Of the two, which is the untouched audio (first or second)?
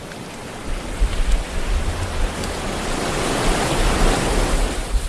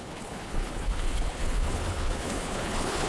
first